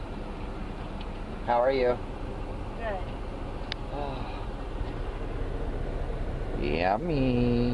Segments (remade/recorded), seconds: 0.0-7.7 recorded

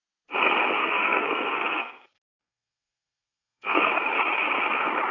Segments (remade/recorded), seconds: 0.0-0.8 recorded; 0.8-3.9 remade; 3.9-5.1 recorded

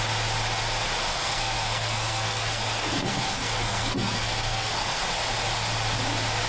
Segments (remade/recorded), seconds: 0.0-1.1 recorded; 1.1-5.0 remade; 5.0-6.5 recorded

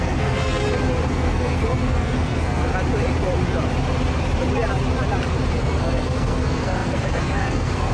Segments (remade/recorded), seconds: 0.0-0.6 remade; 0.6-1.1 recorded; 1.1-2.7 remade; 2.7-5.6 recorded; 5.6-7.9 remade